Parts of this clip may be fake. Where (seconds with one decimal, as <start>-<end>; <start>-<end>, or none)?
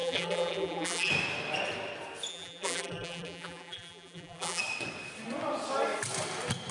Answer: 0.0-1.1; 2.3-4.6